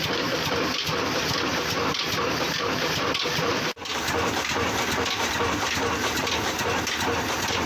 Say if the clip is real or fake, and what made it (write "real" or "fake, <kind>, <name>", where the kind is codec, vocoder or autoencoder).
real